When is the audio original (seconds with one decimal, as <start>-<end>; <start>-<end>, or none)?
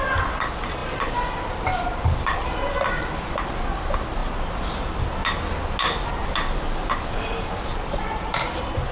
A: 0.0-7.7; 8.4-8.9